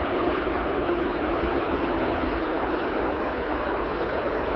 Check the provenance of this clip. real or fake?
fake